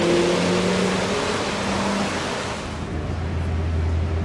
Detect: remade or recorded recorded